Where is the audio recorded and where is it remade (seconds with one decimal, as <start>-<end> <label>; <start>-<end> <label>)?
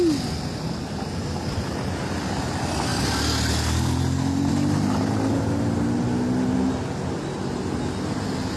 0.0-8.6 recorded